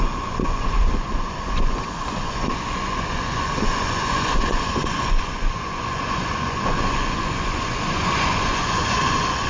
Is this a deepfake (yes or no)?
yes